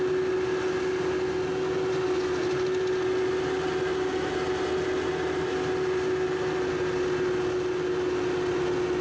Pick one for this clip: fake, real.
real